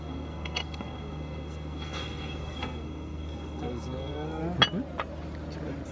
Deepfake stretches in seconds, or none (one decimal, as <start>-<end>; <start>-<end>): 0.0-4.4